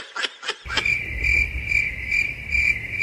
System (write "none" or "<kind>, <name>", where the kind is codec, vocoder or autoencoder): none